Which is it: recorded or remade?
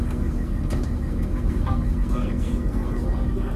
remade